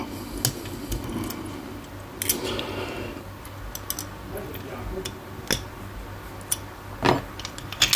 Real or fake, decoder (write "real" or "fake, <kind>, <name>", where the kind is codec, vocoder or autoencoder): real